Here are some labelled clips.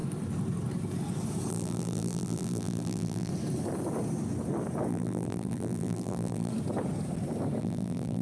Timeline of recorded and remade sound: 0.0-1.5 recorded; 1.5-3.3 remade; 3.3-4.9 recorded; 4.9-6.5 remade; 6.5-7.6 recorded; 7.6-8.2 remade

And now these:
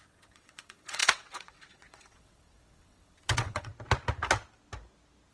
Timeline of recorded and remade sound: 0.0-3.7 remade; 3.7-5.3 recorded

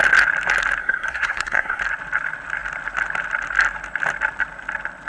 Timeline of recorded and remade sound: 0.0-0.8 recorded; 0.8-1.8 remade; 1.8-5.1 recorded

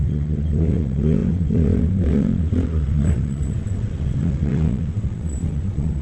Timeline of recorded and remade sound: 0.0-6.0 remade